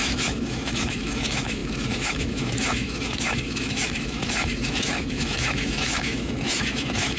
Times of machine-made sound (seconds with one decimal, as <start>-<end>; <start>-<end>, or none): 0.0-7.2